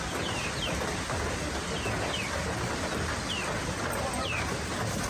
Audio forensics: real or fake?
real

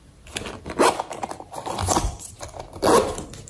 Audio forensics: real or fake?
real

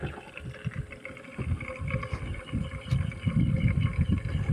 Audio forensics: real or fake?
real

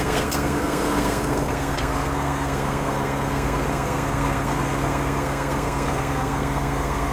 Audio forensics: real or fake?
fake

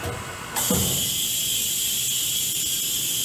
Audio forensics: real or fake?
real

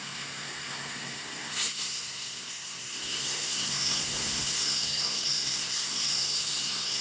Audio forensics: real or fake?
fake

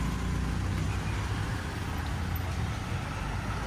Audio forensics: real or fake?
real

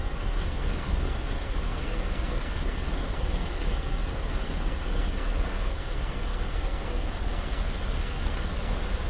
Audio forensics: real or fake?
fake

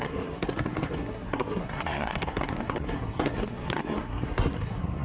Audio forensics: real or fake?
fake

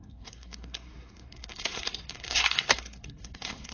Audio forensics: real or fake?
fake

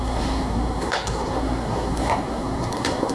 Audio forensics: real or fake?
fake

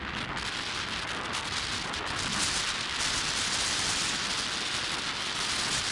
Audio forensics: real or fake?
real